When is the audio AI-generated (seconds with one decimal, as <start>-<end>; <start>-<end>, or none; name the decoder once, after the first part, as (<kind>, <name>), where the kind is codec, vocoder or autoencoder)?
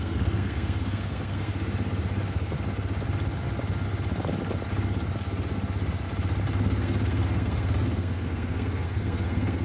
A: 0.0-1.5 (codec, SNAC); 6.6-9.6